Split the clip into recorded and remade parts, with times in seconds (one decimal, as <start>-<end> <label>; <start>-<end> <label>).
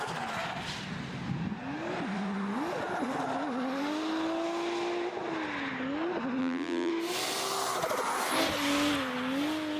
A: 0.0-6.4 recorded; 6.4-6.9 remade; 6.9-9.8 recorded